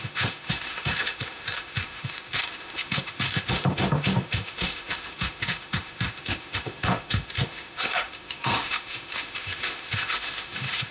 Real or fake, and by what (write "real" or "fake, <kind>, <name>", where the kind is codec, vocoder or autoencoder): fake, autoencoder, DAC-VAE